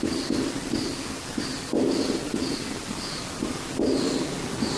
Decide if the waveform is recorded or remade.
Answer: recorded